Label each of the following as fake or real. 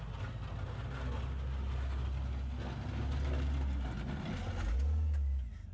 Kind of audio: real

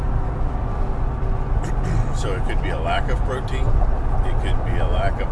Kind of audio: real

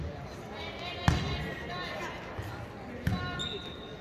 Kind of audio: real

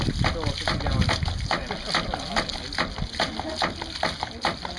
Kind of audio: real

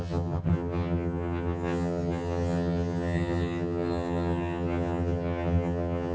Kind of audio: fake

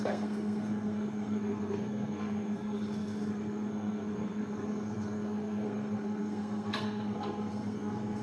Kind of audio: fake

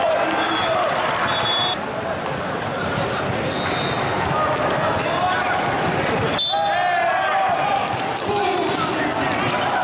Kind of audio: real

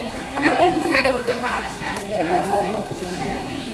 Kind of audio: fake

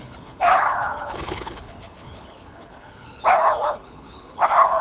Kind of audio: fake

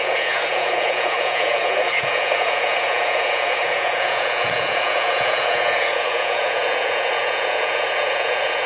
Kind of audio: fake